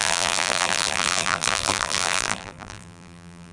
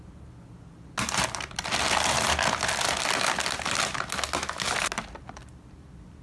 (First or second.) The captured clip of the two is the second